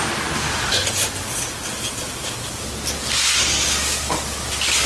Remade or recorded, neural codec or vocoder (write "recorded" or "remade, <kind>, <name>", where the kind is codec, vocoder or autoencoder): recorded